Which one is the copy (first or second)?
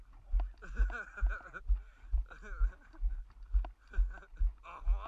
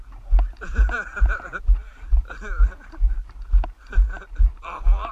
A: second